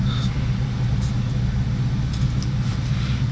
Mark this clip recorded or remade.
recorded